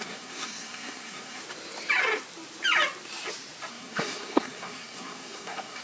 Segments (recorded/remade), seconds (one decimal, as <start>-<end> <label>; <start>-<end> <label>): 0.0-1.4 remade; 1.4-3.7 recorded; 3.7-5.8 remade